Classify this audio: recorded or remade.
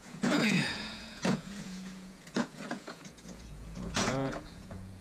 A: remade